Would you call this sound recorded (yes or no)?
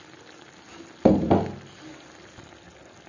yes